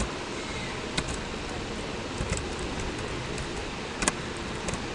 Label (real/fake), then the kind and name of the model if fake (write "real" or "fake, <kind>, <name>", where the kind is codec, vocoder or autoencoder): real